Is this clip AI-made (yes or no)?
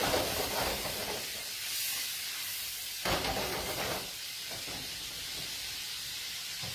yes